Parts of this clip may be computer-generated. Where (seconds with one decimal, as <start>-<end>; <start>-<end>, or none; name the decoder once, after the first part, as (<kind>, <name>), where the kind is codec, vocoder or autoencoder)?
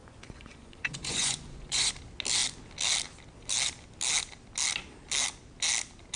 0.0-1.9 (vocoder, Vocos)